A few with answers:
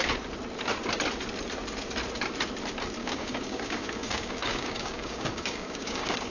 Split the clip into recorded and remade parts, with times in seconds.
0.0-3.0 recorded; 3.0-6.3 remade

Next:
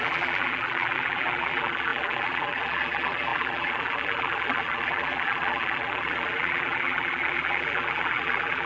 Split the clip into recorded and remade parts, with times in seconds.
0.0-8.7 remade

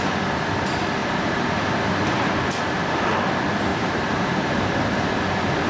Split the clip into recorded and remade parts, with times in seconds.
0.0-1.0 recorded; 1.0-2.6 remade; 2.6-3.7 recorded; 3.7-5.1 remade; 5.1-5.7 recorded